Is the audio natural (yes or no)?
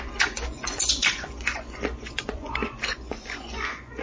no